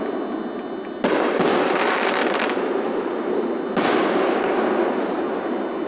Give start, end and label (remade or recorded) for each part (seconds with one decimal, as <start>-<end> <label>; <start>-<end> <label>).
0.0-2.2 recorded; 2.2-4.1 remade; 4.1-5.9 recorded